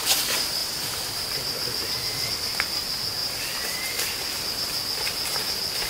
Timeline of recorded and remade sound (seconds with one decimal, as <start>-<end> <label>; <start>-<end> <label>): 0.0-0.6 recorded; 0.6-2.3 remade; 2.3-3.2 recorded; 3.2-5.9 remade